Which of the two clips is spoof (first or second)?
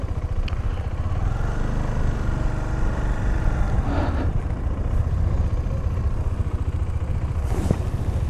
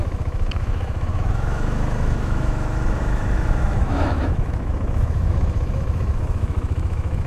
second